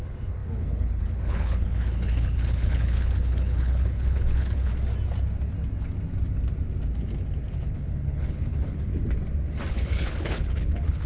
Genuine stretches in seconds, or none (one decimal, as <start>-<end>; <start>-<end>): 4.7-7.5; 8.9-9.7